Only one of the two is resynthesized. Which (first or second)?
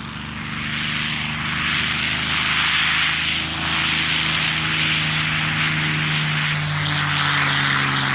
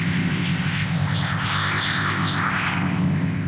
second